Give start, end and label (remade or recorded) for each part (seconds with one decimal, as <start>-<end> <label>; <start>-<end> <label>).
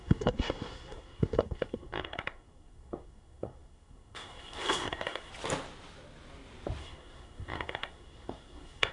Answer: 0.0-5.3 remade; 5.3-6.8 recorded; 6.8-8.9 remade